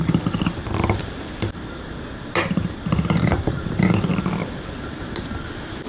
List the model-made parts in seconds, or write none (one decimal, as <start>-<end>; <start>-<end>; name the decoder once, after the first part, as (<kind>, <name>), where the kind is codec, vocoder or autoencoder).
0.0-5.9 (vocoder, BigVGAN v2)